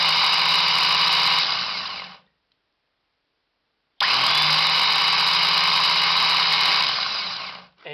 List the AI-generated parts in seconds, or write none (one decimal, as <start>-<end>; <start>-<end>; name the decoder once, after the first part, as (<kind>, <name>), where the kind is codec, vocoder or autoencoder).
6.5-7.5 (vocoder, BigVGAN v2)